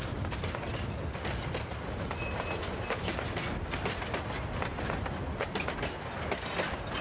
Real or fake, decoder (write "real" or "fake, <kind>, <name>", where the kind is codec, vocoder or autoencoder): real